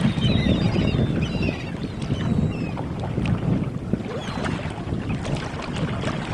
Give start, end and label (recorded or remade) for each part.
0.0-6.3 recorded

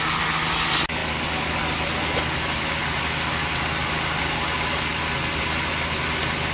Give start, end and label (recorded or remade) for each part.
0.0-6.5 recorded

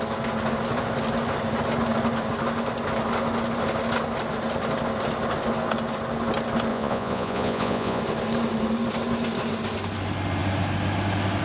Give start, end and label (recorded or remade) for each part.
0.0-6.7 recorded; 6.7-8.0 remade; 8.0-11.4 recorded